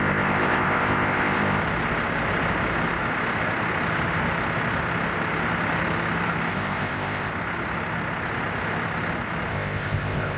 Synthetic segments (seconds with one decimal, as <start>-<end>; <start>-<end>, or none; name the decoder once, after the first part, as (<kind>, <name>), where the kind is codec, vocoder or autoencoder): 0.0-1.6 (codec, ZipCodec); 6.5-7.3; 9.5-10.4